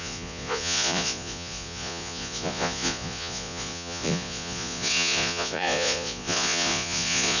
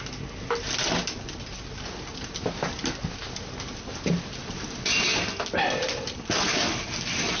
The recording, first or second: second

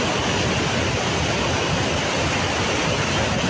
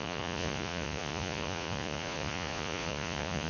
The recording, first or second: first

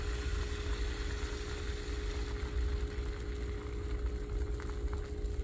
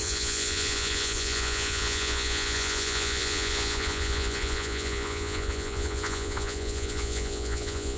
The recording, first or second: first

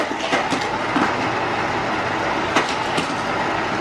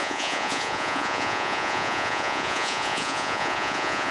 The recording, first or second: first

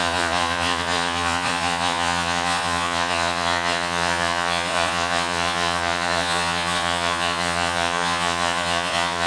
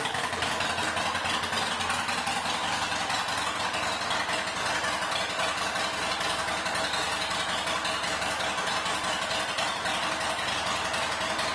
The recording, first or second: second